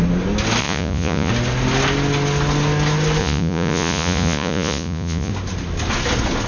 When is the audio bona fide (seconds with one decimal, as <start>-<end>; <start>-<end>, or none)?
0.0-0.6; 1.3-3.2; 5.3-6.5